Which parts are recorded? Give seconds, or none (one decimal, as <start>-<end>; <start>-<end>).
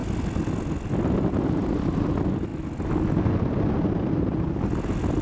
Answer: 0.0-5.2